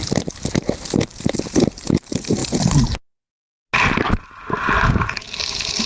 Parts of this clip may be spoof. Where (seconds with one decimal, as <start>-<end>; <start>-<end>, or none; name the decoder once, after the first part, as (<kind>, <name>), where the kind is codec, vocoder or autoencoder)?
0.0-0.5 (vocoder, BigVGAN v2); 1.1-1.6